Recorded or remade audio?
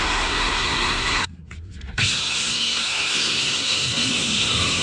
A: remade